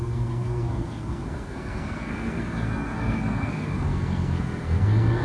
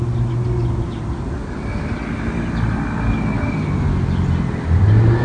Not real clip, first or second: first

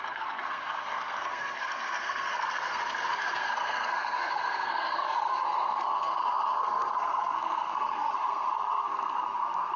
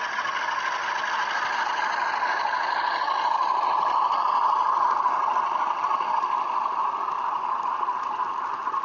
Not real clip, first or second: first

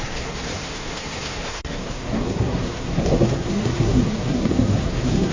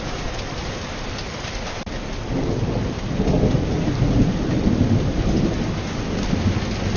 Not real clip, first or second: first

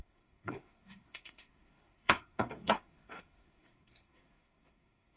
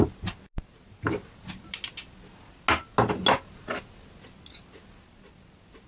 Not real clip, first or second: first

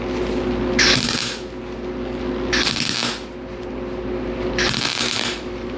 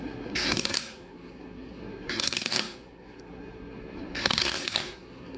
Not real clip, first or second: second